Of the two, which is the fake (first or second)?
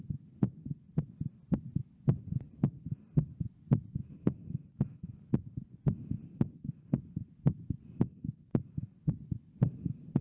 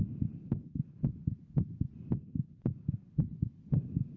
first